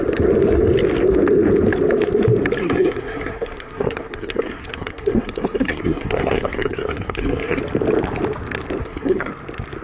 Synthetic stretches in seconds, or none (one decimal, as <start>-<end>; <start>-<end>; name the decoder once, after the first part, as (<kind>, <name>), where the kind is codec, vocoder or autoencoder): 2.6-7.6 (codec, SNAC); 8.8-9.3

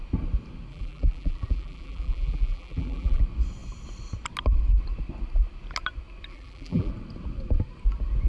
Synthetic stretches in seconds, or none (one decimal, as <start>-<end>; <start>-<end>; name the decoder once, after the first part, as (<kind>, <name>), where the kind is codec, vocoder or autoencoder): 0.7-3.2 (vocoder, BigVGAN v2); 6.3-6.9

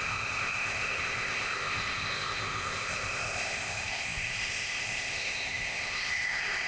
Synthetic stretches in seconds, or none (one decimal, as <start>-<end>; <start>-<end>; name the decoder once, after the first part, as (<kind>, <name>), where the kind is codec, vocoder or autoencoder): 0.0-6.7 (codec, ZipCodec)

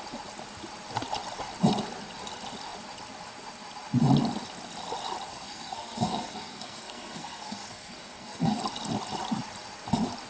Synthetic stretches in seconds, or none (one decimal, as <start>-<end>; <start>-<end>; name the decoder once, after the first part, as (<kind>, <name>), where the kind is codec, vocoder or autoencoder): 5.3-8.6 (codec, SNAC)

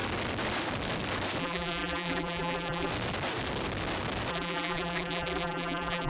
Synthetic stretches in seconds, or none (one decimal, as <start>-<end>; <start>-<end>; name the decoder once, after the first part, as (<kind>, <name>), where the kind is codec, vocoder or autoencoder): 1.4-2.9 (vocoder, BigVGAN v2); 4.3-6.1